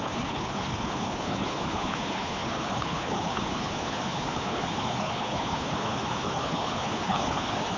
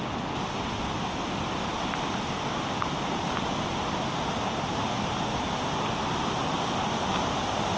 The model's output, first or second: first